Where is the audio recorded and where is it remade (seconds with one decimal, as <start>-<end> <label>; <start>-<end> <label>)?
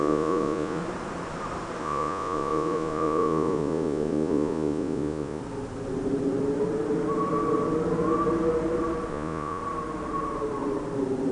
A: 0.0-0.8 remade; 0.8-1.8 recorded; 1.8-5.4 remade; 5.4-9.1 recorded; 9.1-9.6 remade; 9.6-11.3 recorded